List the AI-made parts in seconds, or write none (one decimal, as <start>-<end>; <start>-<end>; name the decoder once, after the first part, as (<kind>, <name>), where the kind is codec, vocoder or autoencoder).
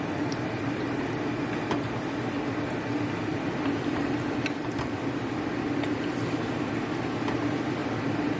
3.3-5.8 (vocoder, BigVGAN v2); 7.8-8.4